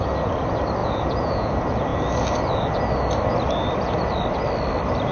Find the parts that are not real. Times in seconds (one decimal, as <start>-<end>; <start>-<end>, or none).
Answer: 0.8-1.5